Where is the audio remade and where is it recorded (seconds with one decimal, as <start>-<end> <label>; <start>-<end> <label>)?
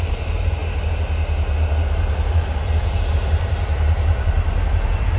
0.0-0.6 remade; 0.6-2.1 recorded; 2.1-5.2 remade